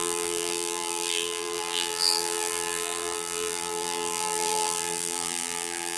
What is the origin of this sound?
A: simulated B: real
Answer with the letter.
A